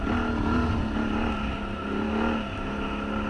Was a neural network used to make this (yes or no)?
no